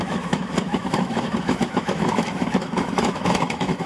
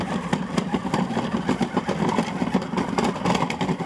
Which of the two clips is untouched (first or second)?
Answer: second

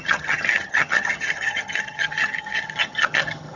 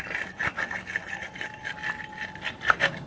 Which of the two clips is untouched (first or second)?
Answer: second